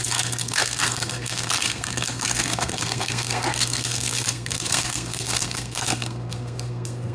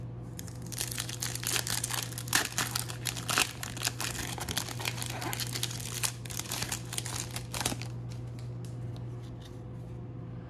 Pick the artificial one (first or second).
first